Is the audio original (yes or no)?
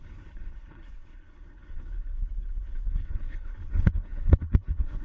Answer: no